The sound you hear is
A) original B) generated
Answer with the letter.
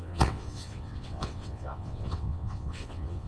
B